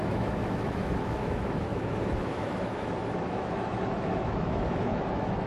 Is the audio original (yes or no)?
no